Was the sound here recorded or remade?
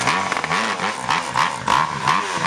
recorded